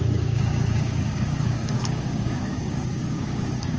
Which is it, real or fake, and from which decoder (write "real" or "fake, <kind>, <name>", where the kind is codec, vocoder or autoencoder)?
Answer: fake, codec, DAC